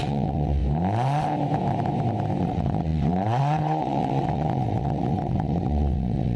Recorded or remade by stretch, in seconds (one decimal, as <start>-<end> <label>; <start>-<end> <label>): 0.0-0.6 remade; 0.6-2.4 recorded; 2.4-6.4 remade